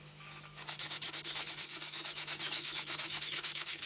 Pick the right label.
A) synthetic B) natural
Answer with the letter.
A